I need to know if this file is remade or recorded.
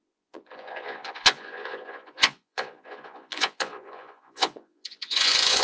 remade